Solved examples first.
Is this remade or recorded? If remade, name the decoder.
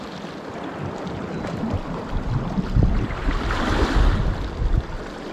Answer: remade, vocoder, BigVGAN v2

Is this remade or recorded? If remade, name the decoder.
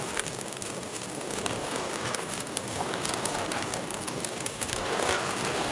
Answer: remade, codec, DAC